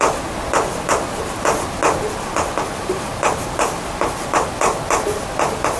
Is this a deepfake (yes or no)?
no